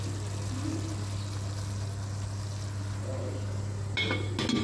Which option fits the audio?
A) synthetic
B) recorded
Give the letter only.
B